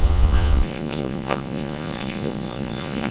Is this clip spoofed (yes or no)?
yes